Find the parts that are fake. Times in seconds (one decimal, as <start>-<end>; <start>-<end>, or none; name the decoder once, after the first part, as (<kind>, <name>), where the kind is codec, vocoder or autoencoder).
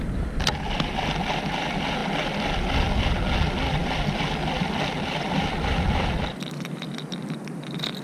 none